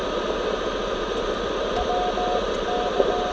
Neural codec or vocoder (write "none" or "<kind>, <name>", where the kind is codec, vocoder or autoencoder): none